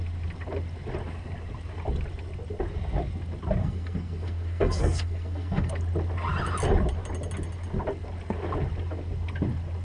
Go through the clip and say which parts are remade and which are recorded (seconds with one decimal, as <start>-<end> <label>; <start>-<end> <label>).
0.0-3.6 recorded; 3.6-5.7 remade; 5.7-9.8 recorded